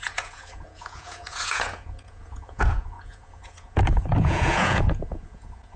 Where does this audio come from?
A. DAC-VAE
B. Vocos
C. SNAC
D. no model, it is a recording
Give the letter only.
B